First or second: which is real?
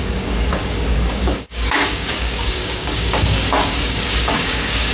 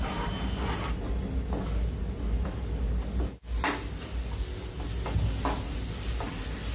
second